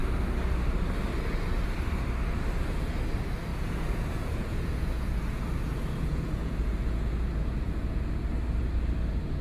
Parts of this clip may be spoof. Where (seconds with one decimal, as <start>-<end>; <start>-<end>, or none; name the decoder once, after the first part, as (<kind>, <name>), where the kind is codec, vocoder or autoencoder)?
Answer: 3.5-8.3 (vocoder, Vocos)